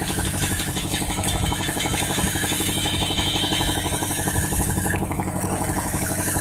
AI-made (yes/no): yes